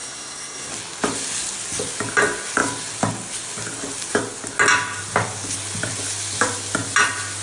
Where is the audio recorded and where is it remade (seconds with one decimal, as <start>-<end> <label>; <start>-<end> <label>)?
0.0-0.7 remade; 0.7-7.4 recorded